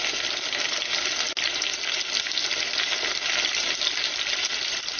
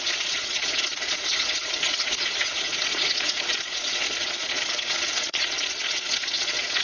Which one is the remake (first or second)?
second